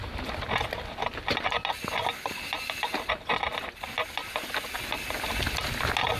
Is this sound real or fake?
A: real